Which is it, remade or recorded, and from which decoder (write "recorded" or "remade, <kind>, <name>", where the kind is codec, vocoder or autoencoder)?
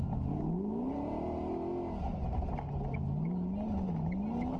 recorded